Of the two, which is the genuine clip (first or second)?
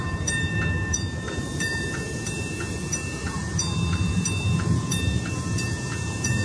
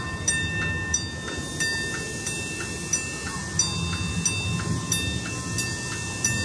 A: second